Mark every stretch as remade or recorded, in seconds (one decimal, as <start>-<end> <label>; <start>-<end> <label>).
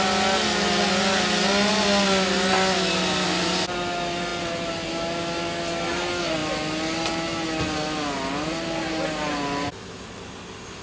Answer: 0.0-10.8 recorded